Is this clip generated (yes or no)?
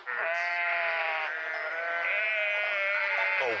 no